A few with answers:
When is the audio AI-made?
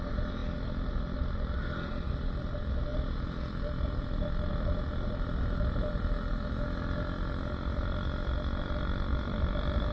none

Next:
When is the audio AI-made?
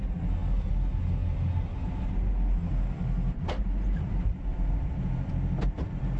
4.5-5.3 (vocoder, BigVGAN v2)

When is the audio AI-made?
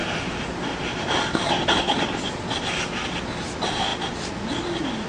none